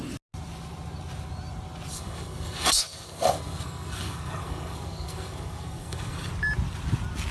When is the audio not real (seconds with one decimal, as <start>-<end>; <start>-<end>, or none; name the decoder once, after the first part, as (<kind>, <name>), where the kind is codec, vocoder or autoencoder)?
1.9-6.3 (codec, SNAC)